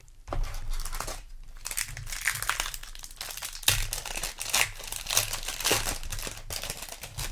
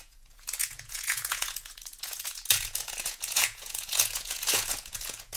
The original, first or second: first